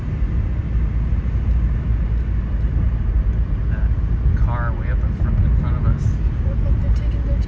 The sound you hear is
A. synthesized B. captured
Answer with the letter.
B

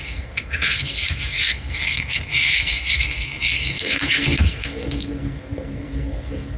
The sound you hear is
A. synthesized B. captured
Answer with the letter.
A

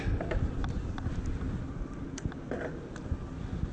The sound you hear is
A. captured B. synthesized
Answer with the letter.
A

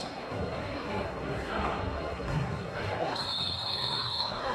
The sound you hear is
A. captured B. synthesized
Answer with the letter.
B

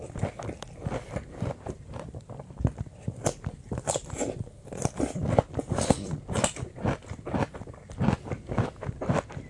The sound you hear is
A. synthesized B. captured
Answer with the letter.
B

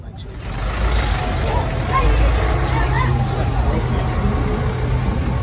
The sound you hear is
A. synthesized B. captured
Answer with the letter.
B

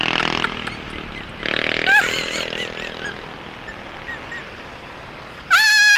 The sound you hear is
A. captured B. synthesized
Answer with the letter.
A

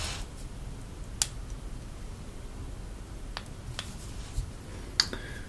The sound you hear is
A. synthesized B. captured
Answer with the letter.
B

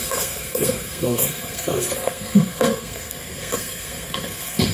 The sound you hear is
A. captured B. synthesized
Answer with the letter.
B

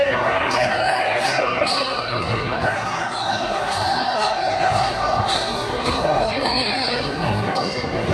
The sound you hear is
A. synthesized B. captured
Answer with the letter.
A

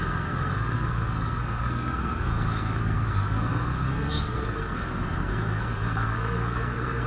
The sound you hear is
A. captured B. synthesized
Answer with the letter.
B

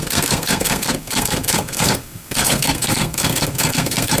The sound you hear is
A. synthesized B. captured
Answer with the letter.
A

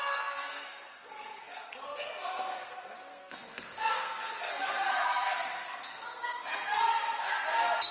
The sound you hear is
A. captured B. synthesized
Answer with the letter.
B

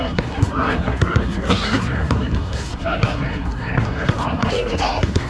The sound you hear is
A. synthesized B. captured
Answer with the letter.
A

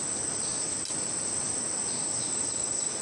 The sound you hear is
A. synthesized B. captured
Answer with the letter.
B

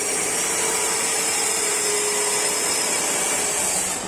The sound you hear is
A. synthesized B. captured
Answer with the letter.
B